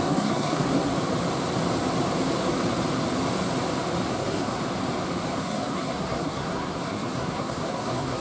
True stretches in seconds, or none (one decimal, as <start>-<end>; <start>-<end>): 0.9-4.1; 4.6-5.4